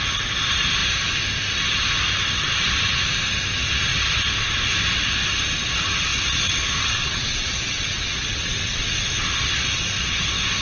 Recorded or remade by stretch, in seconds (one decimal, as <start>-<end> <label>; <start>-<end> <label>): 0.0-6.1 recorded; 6.1-9.1 remade; 9.1-10.6 recorded